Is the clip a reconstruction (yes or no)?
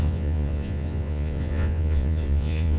yes